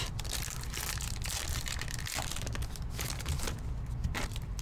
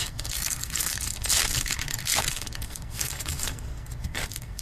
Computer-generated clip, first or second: second